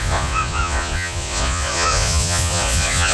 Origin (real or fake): fake